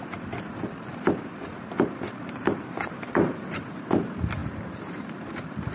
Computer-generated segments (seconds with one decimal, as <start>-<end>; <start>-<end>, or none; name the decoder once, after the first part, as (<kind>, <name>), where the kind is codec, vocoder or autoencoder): 1.5-3.6 (vocoder, BigVGAN v2); 4.4-5.7